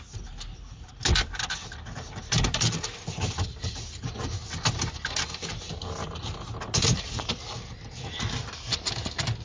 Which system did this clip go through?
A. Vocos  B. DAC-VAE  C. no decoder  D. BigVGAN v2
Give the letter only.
C